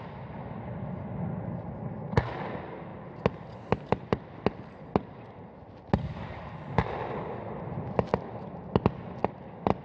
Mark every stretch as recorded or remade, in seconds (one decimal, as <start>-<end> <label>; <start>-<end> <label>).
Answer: 0.0-9.8 recorded